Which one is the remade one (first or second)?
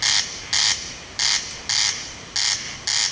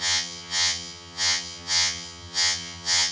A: second